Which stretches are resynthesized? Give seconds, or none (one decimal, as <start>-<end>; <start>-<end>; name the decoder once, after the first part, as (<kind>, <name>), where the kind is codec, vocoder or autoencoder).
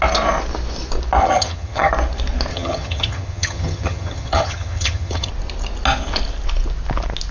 1.2-1.9 (vocoder, HiFi-GAN); 2.5-5.3